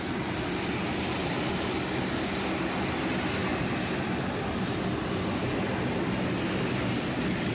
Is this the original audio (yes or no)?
yes